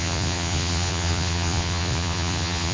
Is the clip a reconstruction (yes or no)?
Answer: yes